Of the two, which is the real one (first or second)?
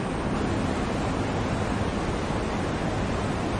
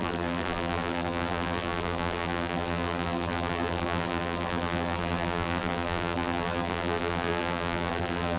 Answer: first